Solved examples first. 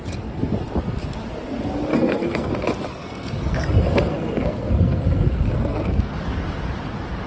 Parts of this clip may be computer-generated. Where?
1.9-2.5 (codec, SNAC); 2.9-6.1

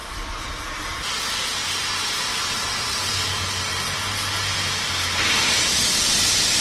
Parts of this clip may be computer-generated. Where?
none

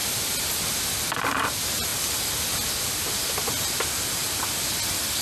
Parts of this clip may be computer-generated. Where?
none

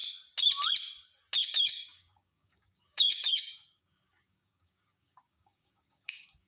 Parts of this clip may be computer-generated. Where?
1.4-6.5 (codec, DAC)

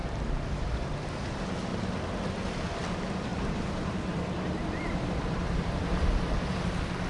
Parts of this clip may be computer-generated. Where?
0.0-1.1 (vocoder, BigVGAN v2); 1.7-2.3; 3.3-6.5

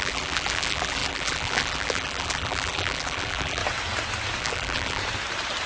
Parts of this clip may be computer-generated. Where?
0.0-3.6 (vocoder, BigVGAN v2); 4.4-5.0

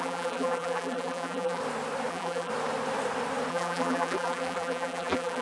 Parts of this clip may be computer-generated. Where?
0.0-1.6 (vocoder, BigVGAN v2); 2.1-2.5; 3.5-5.4

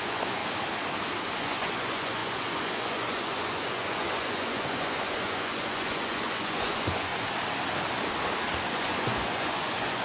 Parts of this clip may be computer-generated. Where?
0.0-0.4 (vocoder, Vocos); 1.3-7.1; 8.7-10.0